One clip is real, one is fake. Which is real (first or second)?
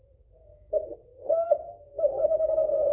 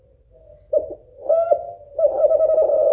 second